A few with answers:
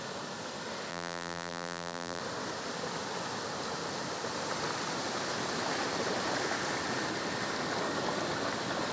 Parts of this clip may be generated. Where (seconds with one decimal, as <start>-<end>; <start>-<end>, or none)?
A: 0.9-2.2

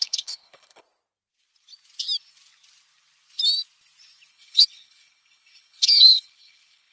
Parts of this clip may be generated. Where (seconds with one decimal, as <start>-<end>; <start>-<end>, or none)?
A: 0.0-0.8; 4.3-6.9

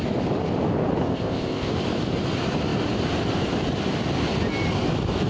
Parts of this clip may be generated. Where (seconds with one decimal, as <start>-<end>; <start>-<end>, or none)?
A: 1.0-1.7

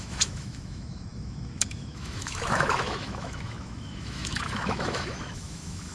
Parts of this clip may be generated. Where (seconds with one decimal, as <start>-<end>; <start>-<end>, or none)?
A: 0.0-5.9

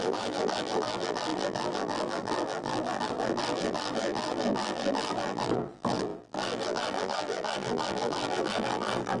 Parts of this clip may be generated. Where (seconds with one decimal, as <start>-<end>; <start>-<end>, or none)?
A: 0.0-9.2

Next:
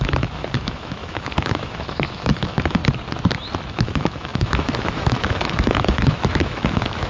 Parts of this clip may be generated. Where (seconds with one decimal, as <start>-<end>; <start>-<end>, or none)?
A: 0.0-2.8; 3.7-7.1

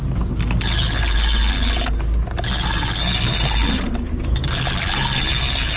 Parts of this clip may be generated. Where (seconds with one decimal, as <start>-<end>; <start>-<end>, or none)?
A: none